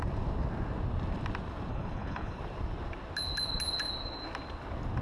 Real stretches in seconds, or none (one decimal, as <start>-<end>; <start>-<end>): 0.0-1.7; 2.4-5.0